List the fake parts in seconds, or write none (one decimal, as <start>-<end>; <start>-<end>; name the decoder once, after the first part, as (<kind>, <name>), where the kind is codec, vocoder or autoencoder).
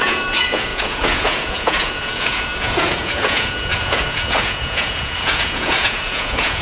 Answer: 0.0-6.6 (vocoder, Vocos)